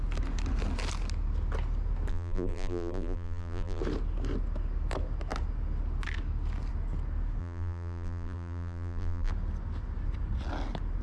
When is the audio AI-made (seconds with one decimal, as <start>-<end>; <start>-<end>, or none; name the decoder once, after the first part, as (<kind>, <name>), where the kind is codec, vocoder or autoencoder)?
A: 2.1-3.8 (vocoder, BigVGAN v2); 7.4-9.3